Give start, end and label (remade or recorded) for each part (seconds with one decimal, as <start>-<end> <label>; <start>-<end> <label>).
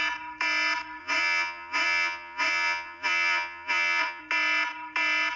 0.0-1.0 recorded; 1.0-4.2 remade; 4.2-5.4 recorded